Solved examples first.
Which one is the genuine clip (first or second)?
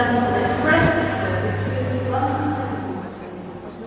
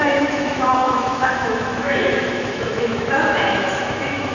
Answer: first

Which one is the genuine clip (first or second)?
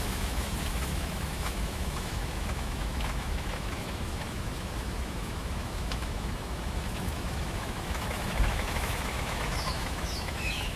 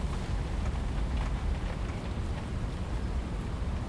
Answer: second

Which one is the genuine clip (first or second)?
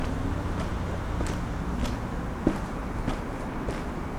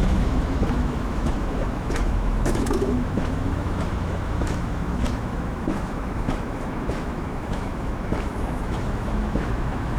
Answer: first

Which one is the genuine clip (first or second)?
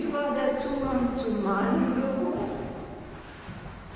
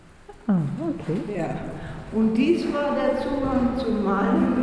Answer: second